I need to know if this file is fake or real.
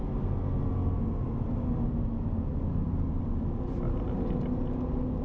real